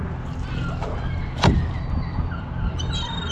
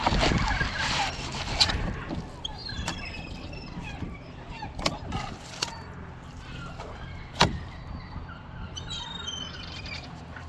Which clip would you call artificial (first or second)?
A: second